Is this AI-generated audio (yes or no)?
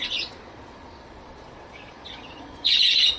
yes